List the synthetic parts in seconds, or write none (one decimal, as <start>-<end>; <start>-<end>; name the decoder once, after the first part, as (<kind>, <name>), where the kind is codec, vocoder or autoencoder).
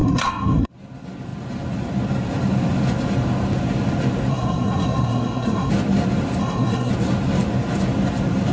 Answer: 0.0-0.7 (codec, SNAC); 4.3-5.7; 6.4-6.9